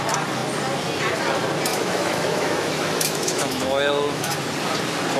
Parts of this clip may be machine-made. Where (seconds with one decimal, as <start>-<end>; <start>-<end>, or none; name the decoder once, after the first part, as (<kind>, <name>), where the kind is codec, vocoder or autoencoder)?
1.7-4.3 (autoencoder, DAC-VAE)